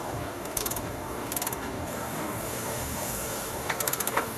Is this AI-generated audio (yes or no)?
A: yes